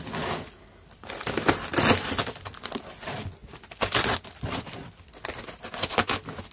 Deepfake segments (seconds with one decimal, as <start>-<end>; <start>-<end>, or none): none